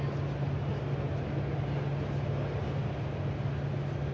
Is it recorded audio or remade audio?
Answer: recorded